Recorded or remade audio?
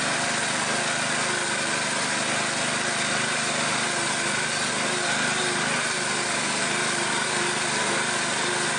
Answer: recorded